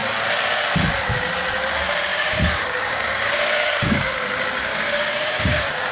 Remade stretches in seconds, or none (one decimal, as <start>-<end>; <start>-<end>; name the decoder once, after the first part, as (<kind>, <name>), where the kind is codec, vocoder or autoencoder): 2.1-4.1 (codec, DAC); 4.7-5.9